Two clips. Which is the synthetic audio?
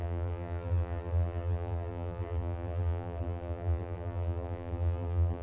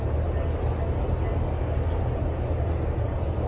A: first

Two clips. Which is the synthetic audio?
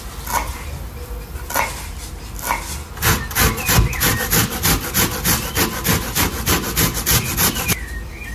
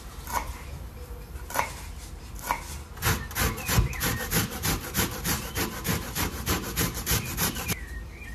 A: second